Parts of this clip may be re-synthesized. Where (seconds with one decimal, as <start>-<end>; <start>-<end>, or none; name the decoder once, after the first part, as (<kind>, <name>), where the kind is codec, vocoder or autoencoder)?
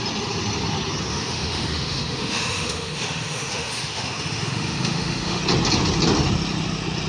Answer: 1.1-5.4 (autoencoder, DAC-VAE)